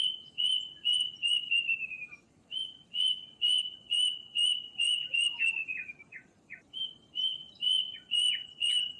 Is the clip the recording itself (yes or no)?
no